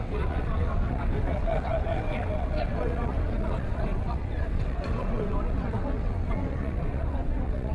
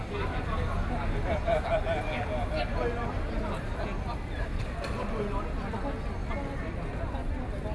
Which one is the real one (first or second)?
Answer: second